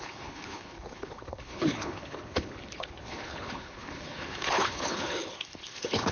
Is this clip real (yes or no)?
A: no